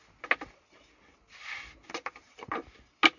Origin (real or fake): real